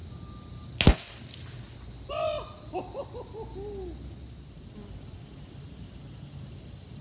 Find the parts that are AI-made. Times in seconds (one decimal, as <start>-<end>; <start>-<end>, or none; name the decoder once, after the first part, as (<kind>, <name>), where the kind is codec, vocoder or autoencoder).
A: none